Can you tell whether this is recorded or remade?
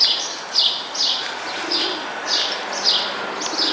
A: recorded